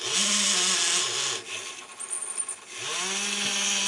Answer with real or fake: real